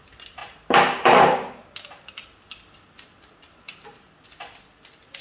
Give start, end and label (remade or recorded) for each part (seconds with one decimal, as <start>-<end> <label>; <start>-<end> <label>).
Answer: 0.0-5.2 recorded

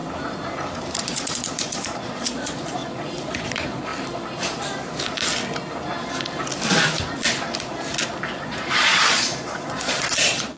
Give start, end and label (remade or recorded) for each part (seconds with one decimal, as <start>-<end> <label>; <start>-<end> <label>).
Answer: 0.0-1.0 recorded; 1.0-3.9 remade; 3.9-8.4 recorded; 8.4-10.6 remade

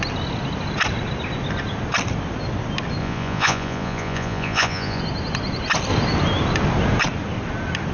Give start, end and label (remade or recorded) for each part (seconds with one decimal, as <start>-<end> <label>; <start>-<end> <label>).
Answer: 0.0-3.0 recorded; 3.0-5.0 remade; 5.0-7.9 recorded

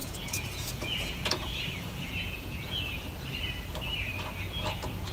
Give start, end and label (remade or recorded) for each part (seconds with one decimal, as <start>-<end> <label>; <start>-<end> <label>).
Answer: 0.0-3.1 remade; 3.1-5.1 recorded

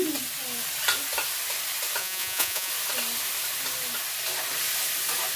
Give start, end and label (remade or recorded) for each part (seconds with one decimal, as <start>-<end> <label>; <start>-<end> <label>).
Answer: 0.0-2.0 recorded; 2.0-2.7 remade; 2.7-5.4 recorded